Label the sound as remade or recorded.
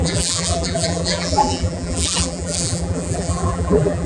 remade